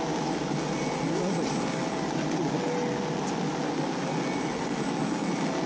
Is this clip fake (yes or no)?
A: no